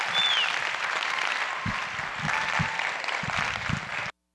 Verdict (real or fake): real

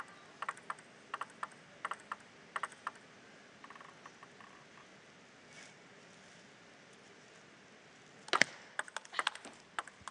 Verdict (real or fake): real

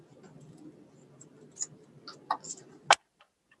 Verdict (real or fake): real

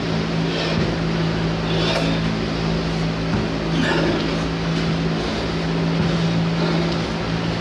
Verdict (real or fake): real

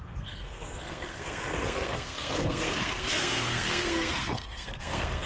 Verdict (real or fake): fake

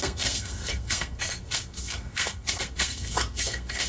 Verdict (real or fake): fake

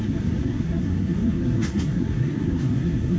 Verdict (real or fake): fake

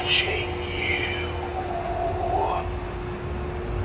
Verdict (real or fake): real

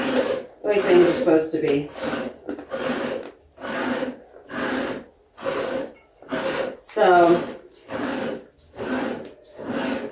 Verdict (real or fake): real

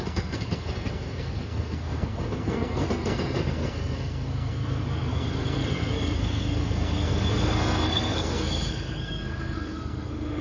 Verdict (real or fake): fake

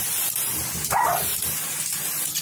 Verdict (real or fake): real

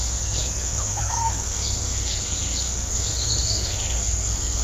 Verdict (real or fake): fake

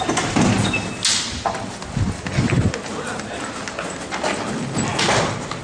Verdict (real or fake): real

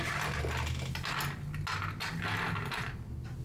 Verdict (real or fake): real